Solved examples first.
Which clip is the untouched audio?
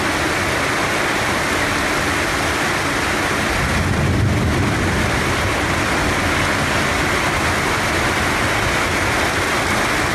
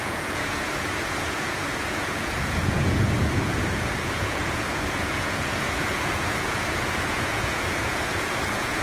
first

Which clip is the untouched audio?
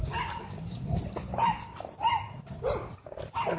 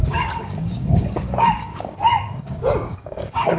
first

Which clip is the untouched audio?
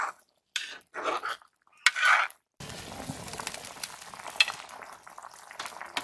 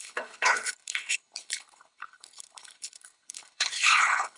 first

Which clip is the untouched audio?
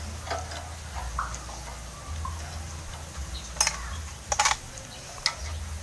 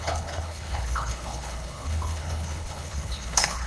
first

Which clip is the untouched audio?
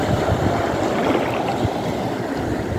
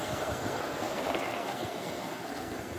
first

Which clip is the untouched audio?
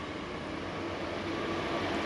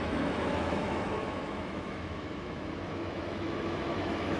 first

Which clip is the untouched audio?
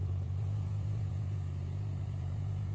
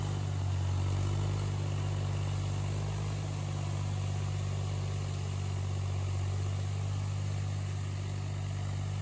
second